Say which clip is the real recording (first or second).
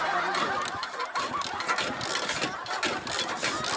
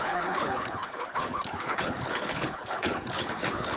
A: first